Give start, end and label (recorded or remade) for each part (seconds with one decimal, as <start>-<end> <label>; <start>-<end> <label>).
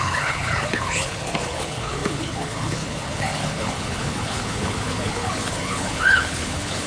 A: 0.0-6.9 remade